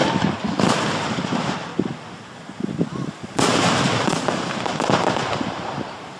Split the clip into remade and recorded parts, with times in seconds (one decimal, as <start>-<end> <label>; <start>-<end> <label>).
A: 0.0-0.9 recorded; 0.9-1.7 remade; 1.7-5.4 recorded; 5.4-6.2 remade